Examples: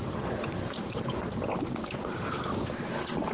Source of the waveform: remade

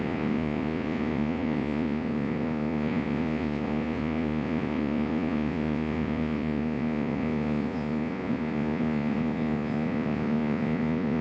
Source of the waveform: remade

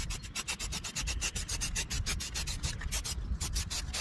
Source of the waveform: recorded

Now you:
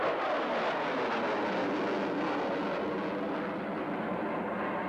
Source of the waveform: recorded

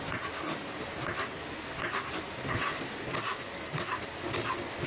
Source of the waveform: recorded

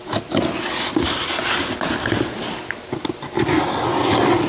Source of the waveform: recorded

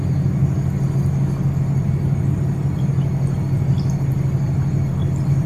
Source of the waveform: recorded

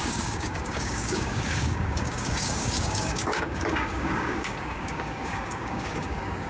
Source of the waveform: remade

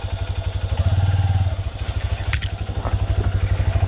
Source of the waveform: recorded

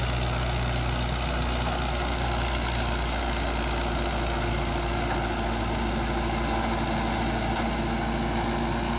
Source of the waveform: recorded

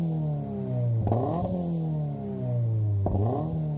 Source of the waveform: recorded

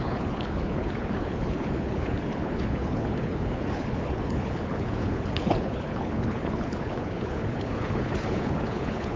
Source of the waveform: remade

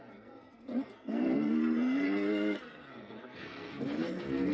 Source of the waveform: remade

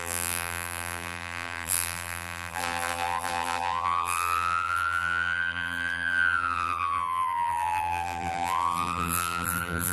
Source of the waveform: remade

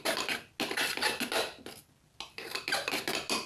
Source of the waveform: recorded